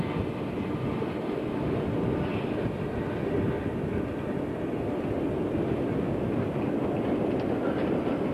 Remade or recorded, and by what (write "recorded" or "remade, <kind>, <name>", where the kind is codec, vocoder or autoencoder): recorded